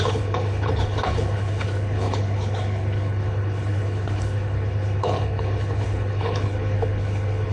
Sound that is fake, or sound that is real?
fake